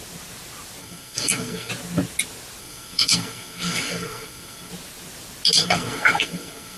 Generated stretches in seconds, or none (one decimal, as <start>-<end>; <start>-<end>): 0.8-1.7; 2.6-4.7; 5.6-6.8